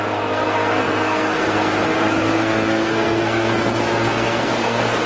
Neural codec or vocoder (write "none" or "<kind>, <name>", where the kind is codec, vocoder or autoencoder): codec, SNAC